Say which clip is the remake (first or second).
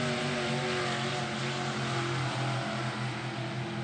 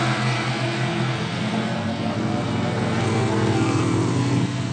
second